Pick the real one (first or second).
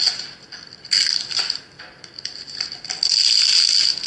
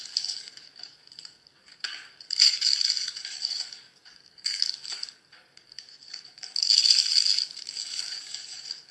first